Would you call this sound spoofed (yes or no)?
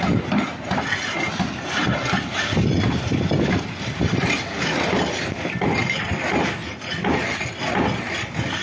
no